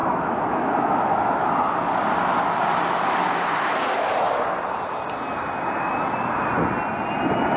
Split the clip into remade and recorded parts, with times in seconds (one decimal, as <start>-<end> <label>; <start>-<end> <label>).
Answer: 0.0-1.5 remade; 1.5-7.6 recorded